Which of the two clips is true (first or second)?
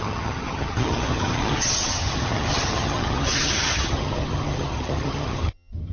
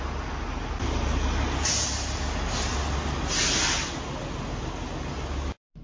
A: second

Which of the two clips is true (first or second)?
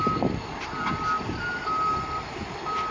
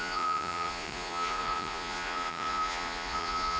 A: first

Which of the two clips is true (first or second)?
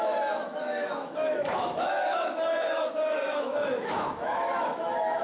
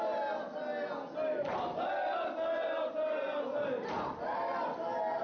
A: second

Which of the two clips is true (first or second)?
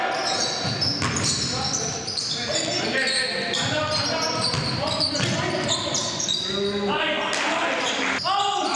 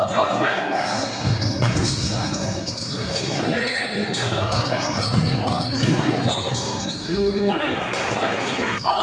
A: first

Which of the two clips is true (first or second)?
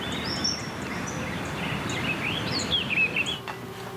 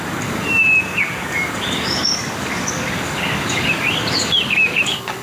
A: first